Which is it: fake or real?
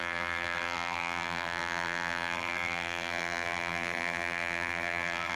fake